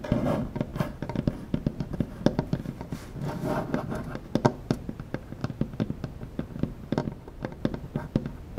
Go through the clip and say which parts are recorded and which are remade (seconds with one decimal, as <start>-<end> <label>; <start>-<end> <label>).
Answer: 0.0-0.7 recorded; 0.7-2.9 remade; 2.9-5.4 recorded; 5.4-6.2 remade; 6.2-7.0 recorded; 7.0-7.6 remade; 7.6-8.6 recorded